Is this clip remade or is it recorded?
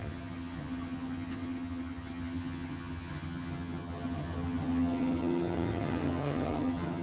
remade